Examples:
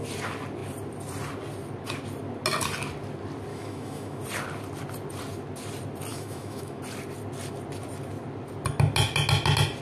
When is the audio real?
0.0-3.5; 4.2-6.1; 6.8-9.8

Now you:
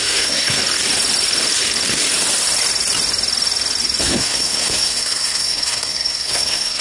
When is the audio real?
0.6-4.0